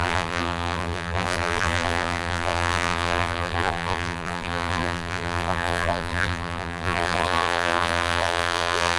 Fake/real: fake